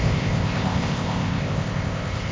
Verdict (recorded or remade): remade